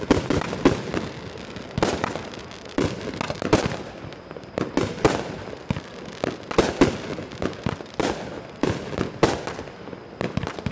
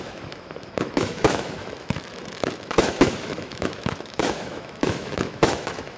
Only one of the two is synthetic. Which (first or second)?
second